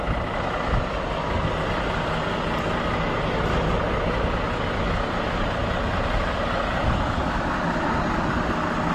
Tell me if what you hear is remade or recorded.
recorded